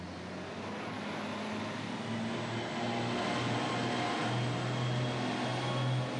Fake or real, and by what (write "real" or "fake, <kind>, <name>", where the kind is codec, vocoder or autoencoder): real